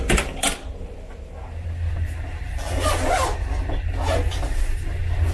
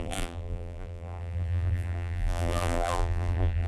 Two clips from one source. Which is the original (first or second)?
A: first